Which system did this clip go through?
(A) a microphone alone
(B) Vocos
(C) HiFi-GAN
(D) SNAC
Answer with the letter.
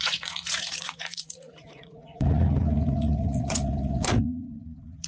B